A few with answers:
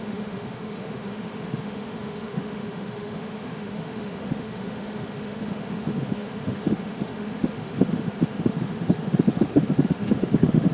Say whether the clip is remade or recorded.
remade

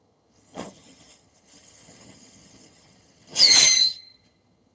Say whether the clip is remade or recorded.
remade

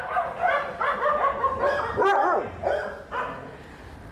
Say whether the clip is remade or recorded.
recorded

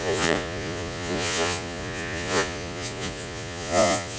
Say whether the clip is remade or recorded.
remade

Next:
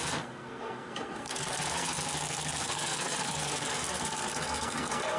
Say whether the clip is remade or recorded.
remade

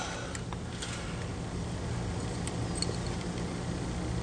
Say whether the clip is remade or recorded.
recorded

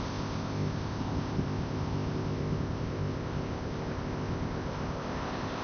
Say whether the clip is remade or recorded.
remade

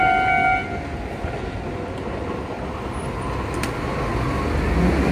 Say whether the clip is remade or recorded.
recorded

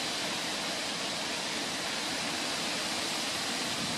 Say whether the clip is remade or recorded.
recorded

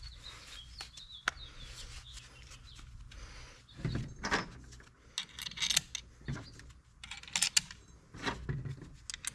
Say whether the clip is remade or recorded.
recorded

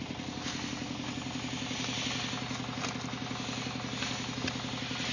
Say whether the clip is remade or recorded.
recorded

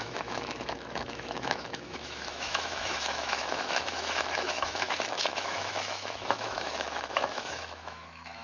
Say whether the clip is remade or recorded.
remade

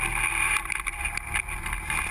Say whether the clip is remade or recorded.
recorded